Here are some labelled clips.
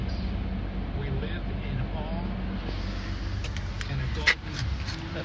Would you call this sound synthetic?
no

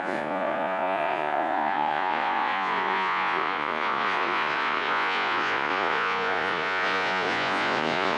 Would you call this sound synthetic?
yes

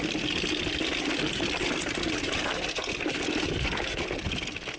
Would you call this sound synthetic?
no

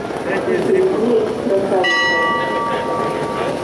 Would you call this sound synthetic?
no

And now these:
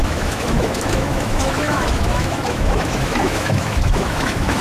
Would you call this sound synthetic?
yes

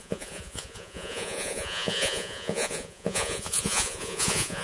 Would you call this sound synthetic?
yes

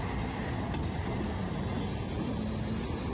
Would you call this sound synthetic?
no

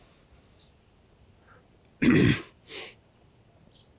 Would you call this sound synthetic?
no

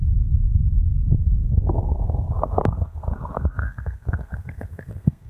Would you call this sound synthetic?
yes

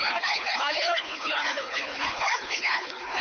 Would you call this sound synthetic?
yes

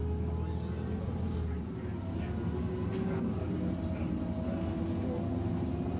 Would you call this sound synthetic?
no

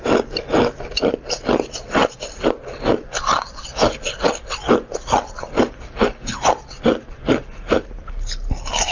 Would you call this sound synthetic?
no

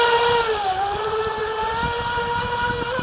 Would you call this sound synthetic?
no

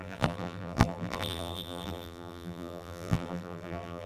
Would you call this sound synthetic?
yes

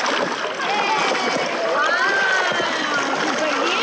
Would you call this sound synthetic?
no